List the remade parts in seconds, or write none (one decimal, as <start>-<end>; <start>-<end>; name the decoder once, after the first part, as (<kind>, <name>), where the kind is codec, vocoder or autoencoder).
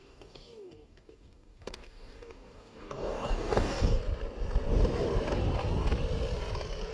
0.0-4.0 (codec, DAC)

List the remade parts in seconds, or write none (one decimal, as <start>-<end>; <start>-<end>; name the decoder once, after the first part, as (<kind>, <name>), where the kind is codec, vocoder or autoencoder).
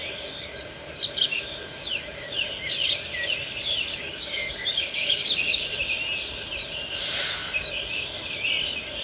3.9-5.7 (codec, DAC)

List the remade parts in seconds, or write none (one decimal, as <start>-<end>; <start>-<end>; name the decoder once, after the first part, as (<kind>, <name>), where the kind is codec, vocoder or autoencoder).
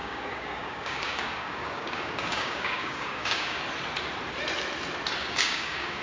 0.0-3.6 (codec, DAC); 5.2-6.0